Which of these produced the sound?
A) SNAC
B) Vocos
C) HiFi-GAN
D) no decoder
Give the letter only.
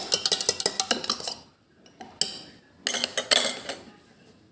D